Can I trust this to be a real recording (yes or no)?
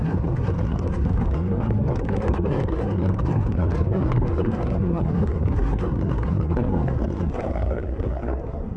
no